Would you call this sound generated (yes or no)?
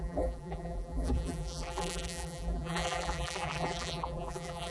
yes